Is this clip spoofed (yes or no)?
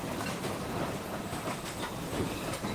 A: yes